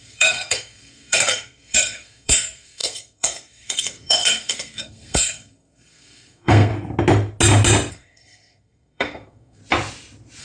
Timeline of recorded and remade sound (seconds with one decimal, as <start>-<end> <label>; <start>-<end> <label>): 0.0-6.7 remade; 6.7-7.9 recorded; 7.9-9.6 remade; 9.6-10.4 recorded